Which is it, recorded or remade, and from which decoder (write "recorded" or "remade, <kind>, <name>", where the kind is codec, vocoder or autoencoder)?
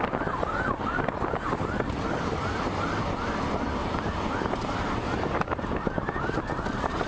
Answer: recorded